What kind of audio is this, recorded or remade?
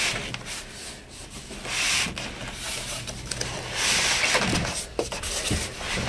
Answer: recorded